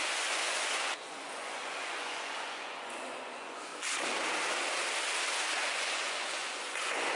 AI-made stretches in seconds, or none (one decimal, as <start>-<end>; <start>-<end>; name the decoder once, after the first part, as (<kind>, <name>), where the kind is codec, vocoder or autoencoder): 0.0-3.7 (vocoder, Vocos); 5.5-7.2